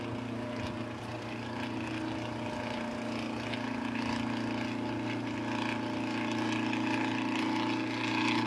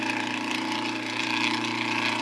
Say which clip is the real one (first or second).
first